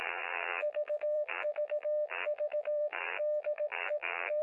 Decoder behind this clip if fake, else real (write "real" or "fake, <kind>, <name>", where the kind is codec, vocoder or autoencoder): fake, vocoder, BigVGAN v2